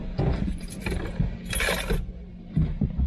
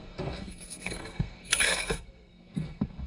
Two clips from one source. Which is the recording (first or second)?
first